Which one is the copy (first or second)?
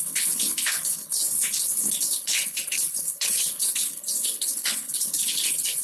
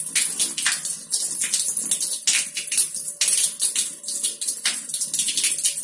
first